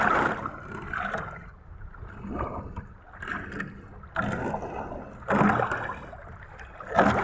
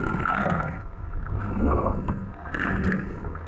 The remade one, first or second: second